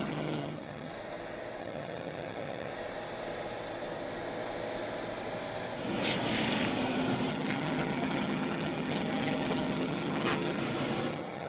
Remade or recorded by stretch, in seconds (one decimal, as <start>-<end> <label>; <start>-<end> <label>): 0.0-0.9 remade; 0.9-1.6 recorded; 1.6-2.7 remade; 2.7-7.3 recorded; 7.3-10.6 remade; 10.6-11.1 recorded; 11.1-11.5 remade